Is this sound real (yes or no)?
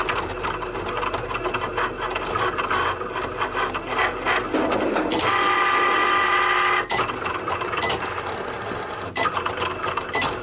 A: yes